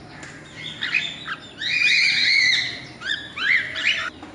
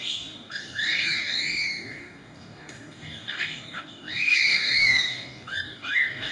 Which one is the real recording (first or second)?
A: first